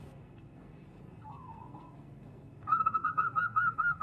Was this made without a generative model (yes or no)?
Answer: no